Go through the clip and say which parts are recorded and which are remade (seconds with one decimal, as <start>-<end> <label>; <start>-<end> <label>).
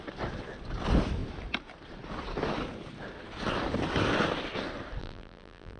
0.0-5.0 recorded; 5.0-5.8 remade